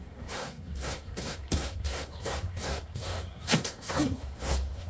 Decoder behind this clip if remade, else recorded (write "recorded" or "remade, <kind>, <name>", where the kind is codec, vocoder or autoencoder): remade, codec, SNAC